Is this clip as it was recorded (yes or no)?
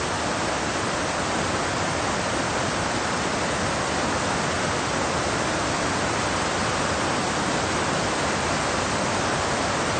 yes